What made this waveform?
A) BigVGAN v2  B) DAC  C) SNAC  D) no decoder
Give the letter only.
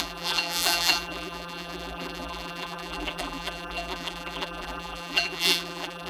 A